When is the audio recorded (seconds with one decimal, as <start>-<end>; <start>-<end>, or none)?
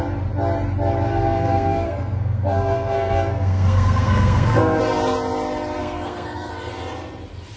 0.0-1.1; 4.8-5.8; 6.5-7.6